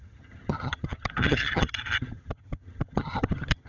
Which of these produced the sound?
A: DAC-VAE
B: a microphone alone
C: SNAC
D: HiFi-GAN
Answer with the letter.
D